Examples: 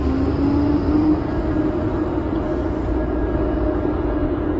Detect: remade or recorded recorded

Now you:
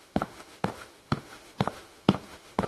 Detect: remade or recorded remade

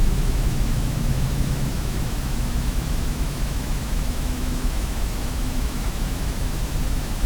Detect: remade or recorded remade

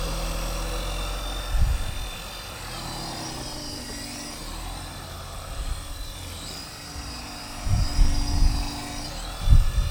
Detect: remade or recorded recorded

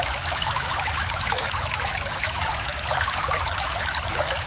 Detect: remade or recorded remade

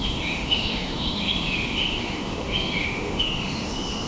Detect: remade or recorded remade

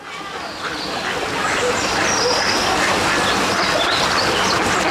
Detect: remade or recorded recorded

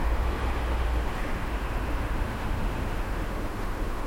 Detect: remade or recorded remade